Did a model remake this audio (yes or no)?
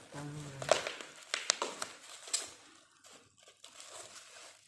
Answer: no